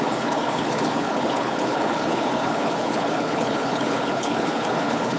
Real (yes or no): no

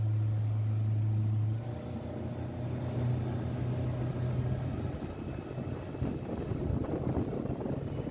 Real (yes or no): yes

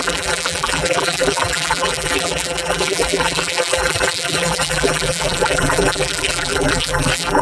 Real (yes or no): no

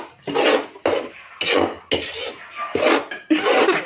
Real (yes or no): yes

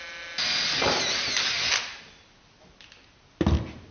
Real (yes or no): yes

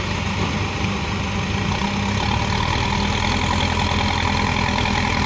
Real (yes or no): yes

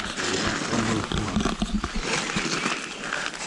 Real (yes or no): yes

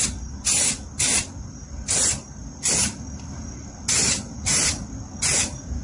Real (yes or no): yes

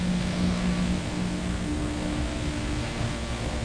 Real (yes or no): no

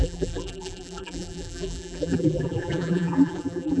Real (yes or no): no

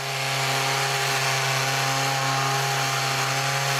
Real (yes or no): yes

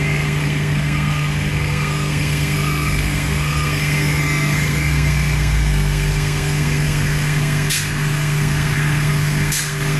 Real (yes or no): no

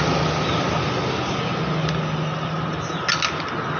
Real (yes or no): yes